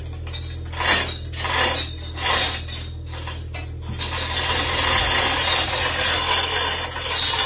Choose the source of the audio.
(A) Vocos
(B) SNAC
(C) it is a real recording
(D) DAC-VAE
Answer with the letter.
C